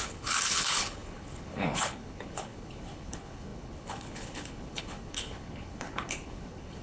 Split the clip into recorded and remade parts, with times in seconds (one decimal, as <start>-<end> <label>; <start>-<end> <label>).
0.0-6.8 remade